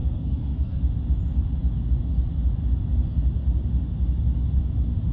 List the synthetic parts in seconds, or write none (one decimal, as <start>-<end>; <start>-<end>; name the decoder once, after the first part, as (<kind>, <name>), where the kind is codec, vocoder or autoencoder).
0.0-0.8 (codec, SNAC)